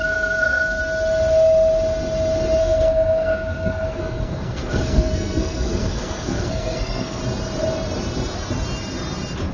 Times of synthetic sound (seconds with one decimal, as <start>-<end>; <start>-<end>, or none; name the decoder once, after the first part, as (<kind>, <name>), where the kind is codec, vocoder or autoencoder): 0.0-0.8 (codec, SNAC); 2.6-7.2